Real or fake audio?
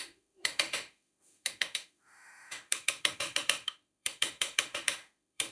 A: fake